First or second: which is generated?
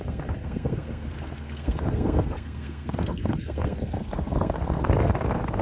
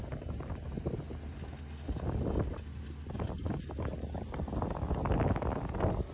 first